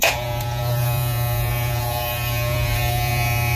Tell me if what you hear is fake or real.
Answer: fake